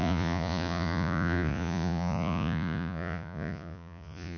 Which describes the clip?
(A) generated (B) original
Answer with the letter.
A